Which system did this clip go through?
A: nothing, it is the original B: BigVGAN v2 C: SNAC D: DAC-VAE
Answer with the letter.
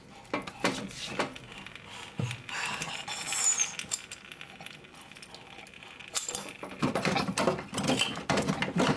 A